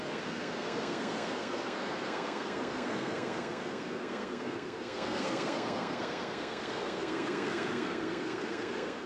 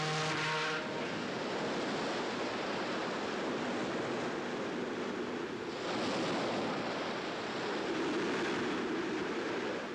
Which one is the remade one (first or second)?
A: first